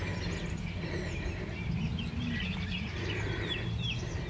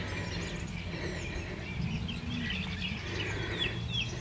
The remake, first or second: first